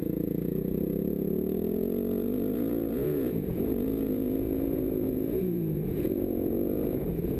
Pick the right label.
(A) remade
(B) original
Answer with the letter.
A